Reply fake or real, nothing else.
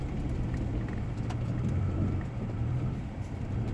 fake